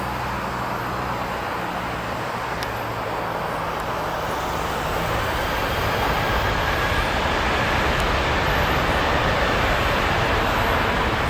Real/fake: real